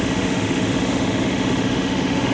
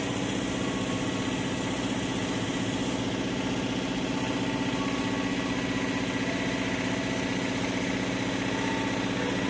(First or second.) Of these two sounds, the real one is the second